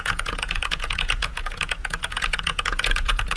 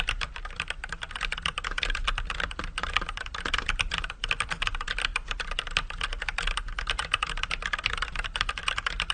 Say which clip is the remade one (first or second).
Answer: first